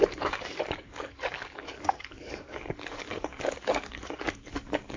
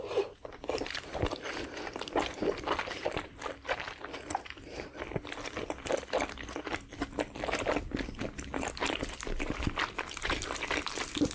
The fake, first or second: first